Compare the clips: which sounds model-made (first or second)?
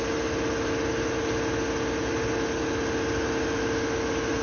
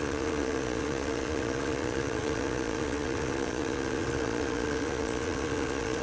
second